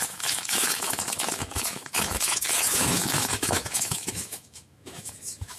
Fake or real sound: fake